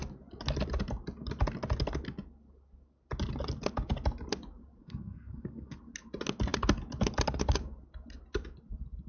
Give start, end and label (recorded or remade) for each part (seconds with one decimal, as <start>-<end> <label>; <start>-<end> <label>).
0.0-4.8 recorded; 4.8-5.8 remade; 5.8-9.1 recorded